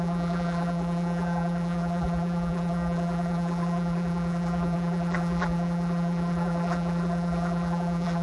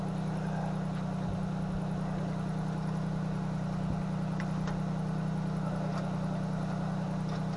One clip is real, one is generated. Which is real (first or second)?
second